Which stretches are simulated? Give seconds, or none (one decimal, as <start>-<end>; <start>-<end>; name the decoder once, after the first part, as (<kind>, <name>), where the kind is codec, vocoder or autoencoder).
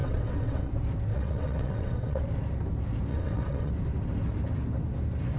0.0-0.7 (vocoder, WaveNeXt); 1.1-2.2; 3.1-3.7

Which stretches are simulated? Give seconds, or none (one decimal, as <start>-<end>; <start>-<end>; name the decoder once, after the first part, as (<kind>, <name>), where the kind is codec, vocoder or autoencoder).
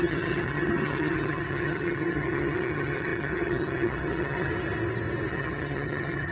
0.0-4.5 (vocoder, HiFi-GAN); 5.3-6.3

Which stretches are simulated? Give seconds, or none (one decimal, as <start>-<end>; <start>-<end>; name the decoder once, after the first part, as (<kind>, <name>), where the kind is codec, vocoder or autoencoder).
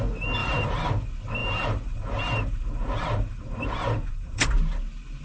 0.4-0.9 (vocoder, BigVGAN v2); 1.4-4.5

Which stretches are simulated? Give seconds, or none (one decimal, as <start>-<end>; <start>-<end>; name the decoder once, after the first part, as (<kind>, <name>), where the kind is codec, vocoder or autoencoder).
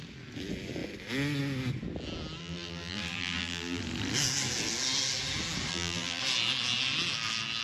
2.4-3.8 (vocoder, BigVGAN v2); 5.7-6.2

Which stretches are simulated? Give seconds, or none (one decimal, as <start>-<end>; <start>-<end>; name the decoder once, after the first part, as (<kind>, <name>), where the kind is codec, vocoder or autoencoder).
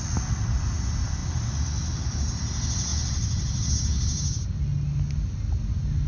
1.2-2.0 (vocoder, BigVGAN v2); 2.9-3.7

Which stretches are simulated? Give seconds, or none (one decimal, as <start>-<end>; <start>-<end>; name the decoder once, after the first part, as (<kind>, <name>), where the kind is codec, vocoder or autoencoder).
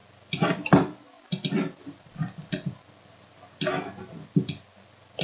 none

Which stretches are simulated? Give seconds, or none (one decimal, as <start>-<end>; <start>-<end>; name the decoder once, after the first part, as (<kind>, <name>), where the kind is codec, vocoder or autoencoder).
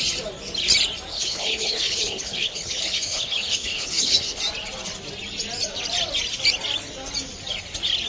1.1-4.4 (codec, HILCodec)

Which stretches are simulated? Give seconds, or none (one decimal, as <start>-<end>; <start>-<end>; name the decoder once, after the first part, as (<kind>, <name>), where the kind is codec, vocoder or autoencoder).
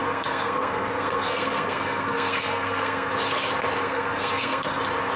0.0-3.1 (codec, SNAC); 3.8-4.8